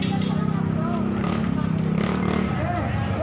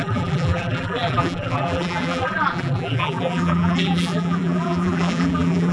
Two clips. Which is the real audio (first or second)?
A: first